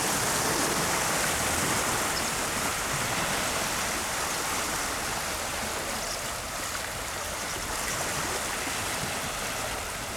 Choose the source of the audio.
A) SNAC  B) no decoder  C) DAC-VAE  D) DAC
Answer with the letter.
B